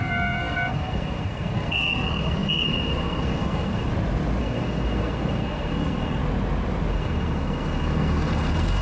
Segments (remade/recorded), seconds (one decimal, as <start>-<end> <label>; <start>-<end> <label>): 0.0-3.9 remade; 3.9-4.4 recorded; 4.4-6.2 remade; 6.2-6.9 recorded; 6.9-8.8 remade